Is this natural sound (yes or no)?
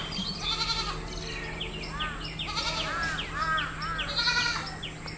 yes